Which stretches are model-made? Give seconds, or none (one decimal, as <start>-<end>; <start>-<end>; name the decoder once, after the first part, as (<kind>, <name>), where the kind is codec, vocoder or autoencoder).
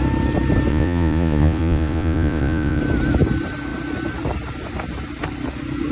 0.7-2.8 (vocoder, Vocos)